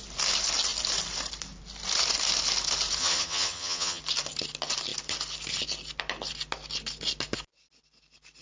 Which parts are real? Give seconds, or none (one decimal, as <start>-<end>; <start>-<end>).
0.0-3.0; 4.0-8.4

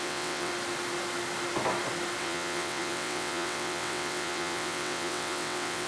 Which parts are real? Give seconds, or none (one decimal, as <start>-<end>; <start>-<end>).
0.5-2.2

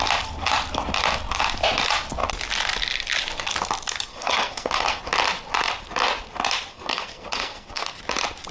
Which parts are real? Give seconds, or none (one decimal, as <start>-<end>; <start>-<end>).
0.0-4.1; 5.0-6.7; 8.0-8.5

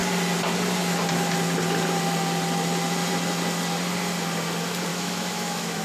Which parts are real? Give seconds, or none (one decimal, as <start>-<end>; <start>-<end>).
0.0-4.9

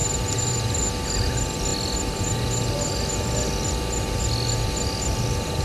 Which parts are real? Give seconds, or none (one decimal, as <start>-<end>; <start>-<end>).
0.0-5.6